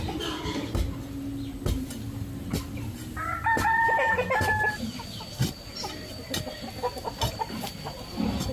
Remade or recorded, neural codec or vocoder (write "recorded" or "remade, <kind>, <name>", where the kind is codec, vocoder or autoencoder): recorded